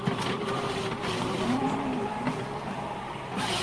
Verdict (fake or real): real